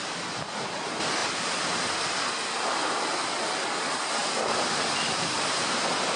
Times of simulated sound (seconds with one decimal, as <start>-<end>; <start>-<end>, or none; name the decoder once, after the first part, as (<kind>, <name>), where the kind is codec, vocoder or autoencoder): none